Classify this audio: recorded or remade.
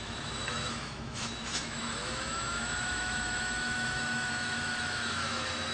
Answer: remade